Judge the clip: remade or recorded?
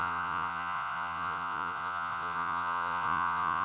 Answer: remade